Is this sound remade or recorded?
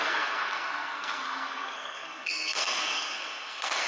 remade